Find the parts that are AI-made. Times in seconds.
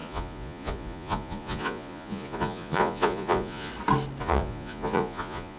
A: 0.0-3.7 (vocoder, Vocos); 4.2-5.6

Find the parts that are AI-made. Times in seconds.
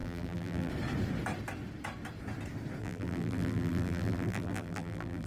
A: 0.0-0.7 (vocoder, BigVGAN v2); 2.8-5.3